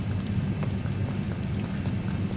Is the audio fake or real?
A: real